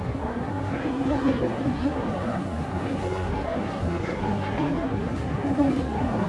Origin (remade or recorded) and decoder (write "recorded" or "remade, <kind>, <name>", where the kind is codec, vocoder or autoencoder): remade, codec, SNAC